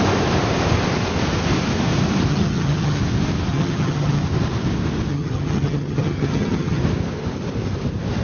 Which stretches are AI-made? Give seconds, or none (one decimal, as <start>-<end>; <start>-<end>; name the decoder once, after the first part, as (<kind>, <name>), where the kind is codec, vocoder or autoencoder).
2.3-3.0 (vocoder, HiFi-GAN); 3.5-4.2; 5.1-6.8